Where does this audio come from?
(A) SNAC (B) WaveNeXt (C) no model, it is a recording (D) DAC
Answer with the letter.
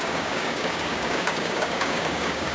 D